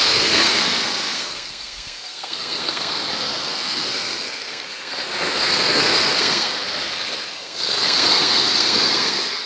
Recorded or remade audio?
remade